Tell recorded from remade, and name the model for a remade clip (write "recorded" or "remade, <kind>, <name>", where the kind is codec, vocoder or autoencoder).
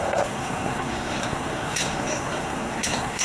remade, codec, SNAC